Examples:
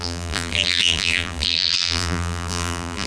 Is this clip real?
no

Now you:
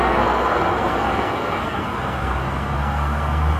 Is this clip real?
no